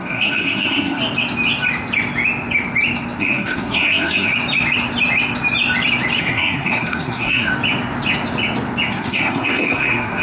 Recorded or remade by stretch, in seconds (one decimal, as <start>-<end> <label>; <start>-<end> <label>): 0.0-1.0 remade; 1.0-3.2 recorded; 3.2-4.3 remade; 4.3-6.2 recorded; 6.2-7.5 remade; 7.5-8.9 recorded; 8.9-10.2 remade